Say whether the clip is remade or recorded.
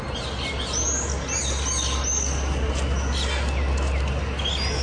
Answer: recorded